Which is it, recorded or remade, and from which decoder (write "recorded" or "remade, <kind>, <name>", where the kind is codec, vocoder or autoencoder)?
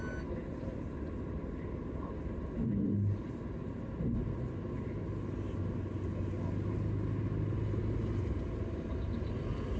recorded